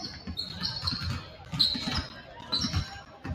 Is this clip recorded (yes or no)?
yes